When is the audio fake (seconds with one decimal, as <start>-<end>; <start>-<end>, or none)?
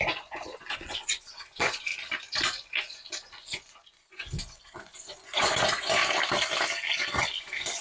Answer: 0.0-1.9; 2.7-6.0; 7.2-7.8